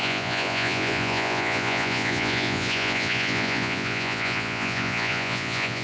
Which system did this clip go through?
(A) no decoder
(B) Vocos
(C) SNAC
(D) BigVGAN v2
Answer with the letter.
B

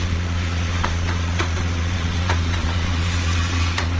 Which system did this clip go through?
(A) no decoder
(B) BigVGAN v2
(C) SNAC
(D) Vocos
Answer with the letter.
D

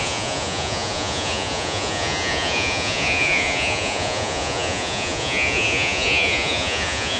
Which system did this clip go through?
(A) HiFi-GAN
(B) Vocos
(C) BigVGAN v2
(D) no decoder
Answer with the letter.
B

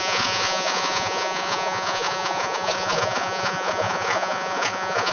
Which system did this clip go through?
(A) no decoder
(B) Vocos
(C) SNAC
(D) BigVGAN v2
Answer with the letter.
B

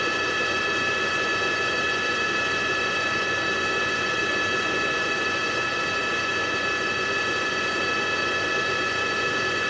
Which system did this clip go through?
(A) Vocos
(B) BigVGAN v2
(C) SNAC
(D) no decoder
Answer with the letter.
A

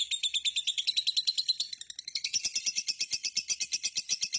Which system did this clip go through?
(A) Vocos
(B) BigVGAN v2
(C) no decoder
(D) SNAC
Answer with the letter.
C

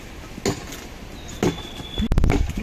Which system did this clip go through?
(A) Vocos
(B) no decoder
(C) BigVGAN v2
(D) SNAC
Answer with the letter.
B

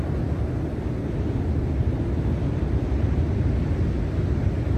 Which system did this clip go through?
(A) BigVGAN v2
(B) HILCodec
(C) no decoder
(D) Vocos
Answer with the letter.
C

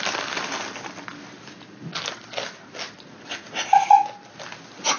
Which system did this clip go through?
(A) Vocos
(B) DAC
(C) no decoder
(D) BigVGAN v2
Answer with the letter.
C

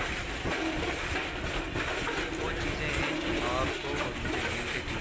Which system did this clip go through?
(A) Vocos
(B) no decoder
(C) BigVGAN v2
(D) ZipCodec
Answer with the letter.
B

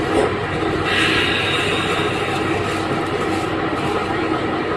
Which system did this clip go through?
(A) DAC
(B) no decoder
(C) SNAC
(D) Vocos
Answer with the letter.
B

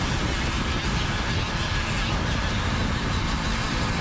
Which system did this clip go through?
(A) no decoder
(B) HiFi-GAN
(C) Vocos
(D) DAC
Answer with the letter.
A